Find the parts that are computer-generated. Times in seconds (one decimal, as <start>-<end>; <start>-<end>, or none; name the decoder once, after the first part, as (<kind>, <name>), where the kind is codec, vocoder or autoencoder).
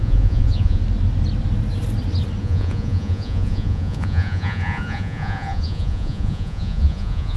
0.0-0.8 (vocoder, Vocos); 2.4-7.4